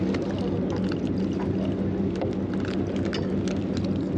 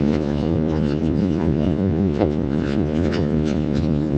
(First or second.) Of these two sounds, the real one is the first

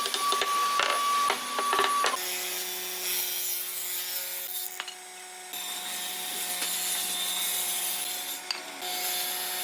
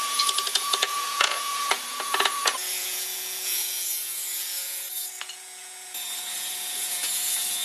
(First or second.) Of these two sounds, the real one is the first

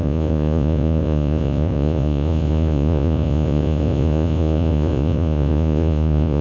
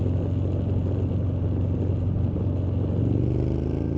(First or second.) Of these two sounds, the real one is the second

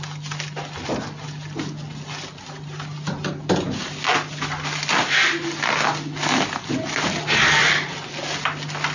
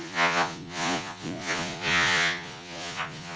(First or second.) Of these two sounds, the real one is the first